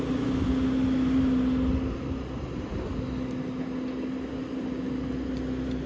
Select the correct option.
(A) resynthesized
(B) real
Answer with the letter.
B